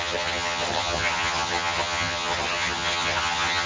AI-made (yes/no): yes